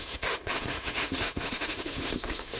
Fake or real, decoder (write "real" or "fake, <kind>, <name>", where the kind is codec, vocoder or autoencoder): fake, autoencoder, DAC-VAE